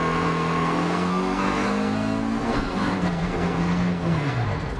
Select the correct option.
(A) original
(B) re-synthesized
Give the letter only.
B